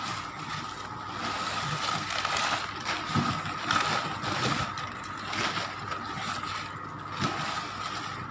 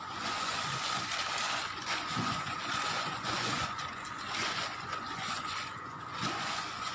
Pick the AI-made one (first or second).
second